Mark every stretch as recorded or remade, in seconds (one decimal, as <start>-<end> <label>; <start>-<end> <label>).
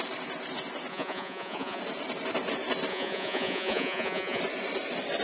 0.0-0.9 recorded; 0.9-1.8 remade; 1.8-2.9 recorded; 2.9-4.4 remade; 4.4-5.2 recorded